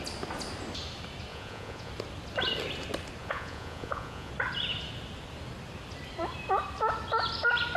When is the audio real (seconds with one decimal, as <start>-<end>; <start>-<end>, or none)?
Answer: 0.0-1.3; 1.9-3.2; 4.3-7.8